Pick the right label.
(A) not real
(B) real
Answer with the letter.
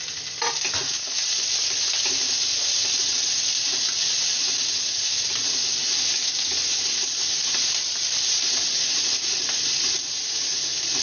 B